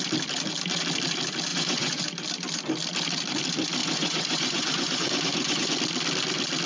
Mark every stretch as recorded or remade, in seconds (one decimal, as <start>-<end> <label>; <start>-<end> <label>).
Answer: 0.0-1.5 recorded; 1.5-2.0 remade; 2.0-3.8 recorded; 3.8-5.8 remade; 5.8-6.7 recorded